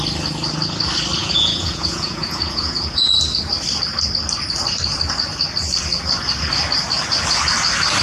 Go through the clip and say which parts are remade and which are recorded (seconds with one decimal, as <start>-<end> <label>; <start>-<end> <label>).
0.0-1.2 recorded; 1.2-3.1 remade; 3.1-8.0 recorded